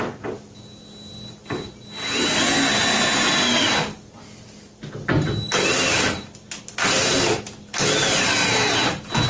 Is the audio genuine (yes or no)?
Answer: yes